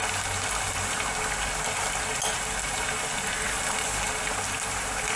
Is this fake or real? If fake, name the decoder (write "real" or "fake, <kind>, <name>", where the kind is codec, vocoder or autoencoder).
real